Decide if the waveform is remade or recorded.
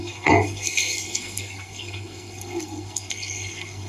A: remade